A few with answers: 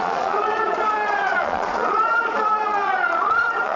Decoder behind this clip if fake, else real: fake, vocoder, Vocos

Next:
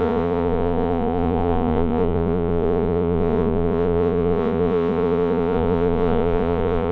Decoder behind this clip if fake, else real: fake, vocoder, Vocos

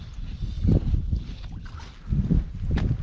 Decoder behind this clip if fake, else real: real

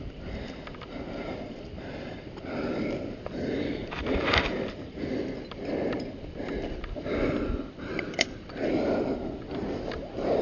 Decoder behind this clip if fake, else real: real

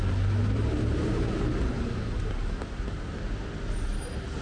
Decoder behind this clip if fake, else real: real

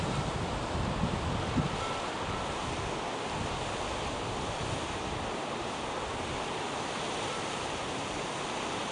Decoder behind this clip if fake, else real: real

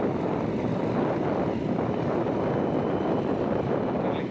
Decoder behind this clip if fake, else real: real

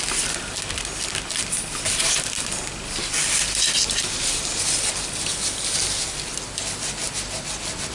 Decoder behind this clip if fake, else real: real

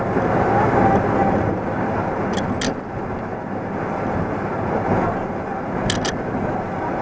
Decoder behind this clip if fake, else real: real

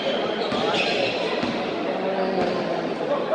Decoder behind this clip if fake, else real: real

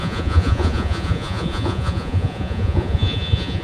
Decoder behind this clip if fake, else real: fake, vocoder, Vocos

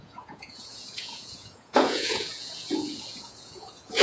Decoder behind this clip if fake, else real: fake, vocoder, Vocos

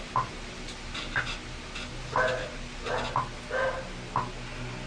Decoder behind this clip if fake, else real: real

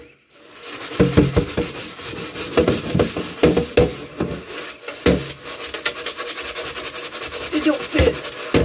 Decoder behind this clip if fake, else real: real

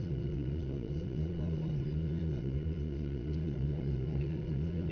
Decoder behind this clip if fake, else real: fake, vocoder, Vocos